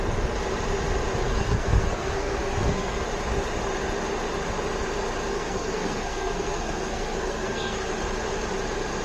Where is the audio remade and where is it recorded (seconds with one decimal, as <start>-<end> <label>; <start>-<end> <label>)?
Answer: 0.0-1.2 recorded; 1.2-3.0 remade; 3.0-5.3 recorded; 5.3-7.9 remade; 7.9-9.0 recorded